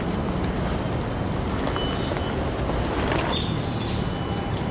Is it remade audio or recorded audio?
recorded